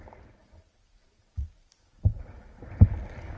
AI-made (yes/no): no